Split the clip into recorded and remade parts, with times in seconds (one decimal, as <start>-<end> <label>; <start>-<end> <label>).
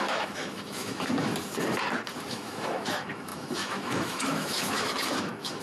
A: 0.0-1.3 remade; 1.3-2.3 recorded; 2.3-5.6 remade